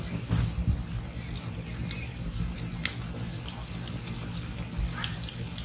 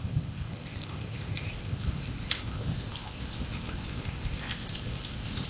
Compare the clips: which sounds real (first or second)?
first